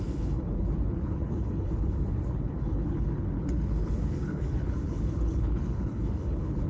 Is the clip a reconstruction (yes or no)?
yes